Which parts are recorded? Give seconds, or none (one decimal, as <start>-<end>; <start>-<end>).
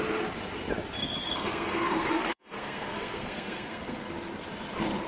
0.0-1.0; 4.1-5.1